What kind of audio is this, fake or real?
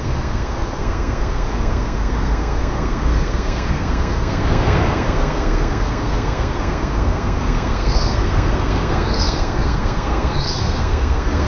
fake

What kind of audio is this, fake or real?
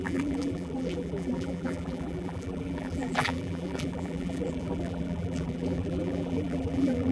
fake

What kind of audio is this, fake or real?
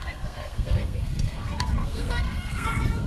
fake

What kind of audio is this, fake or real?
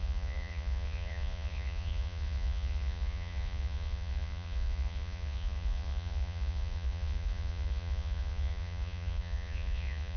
fake